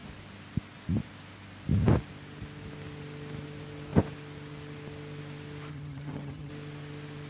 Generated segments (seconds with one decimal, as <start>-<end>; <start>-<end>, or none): 5.7-6.5